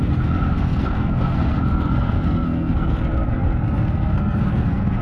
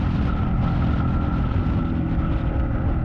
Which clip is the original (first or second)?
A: second